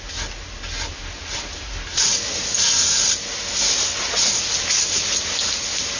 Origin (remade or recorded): recorded